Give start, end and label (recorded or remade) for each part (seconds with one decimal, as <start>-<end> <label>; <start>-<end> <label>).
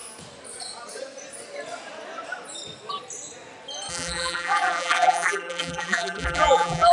0.0-3.9 recorded; 3.9-6.9 remade